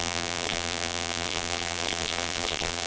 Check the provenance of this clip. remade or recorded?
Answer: remade